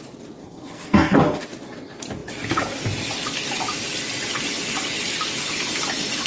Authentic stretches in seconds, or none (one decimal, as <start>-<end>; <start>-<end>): 0.0-0.4; 1.4-6.3